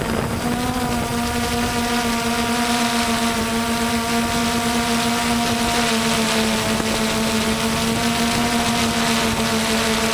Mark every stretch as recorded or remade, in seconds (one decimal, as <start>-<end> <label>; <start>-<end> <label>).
0.0-10.1 recorded